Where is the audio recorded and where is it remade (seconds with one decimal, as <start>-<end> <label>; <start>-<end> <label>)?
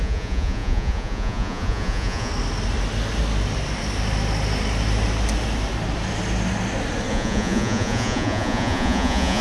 0.0-2.3 remade; 2.3-7.1 recorded; 7.1-9.4 remade